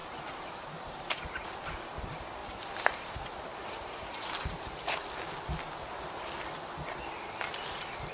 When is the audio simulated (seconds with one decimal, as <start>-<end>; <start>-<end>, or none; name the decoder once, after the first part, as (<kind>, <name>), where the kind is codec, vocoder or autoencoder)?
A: 0.0-1.4 (vocoder, BigVGAN v2); 2.4-3.1; 3.5-4.8